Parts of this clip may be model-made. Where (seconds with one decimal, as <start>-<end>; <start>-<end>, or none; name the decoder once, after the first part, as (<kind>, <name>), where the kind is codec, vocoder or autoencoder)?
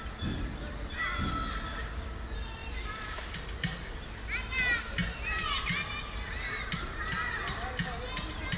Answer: 2.6-3.2 (vocoder, BigVGAN v2); 5.0-7.7